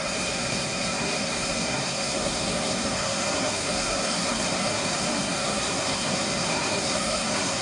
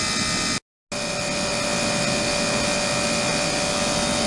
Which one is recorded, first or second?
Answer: second